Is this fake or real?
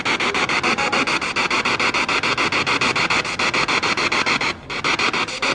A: real